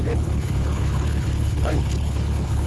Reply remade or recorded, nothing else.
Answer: remade